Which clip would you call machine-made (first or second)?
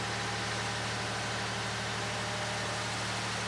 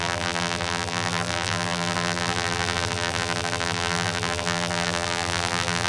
second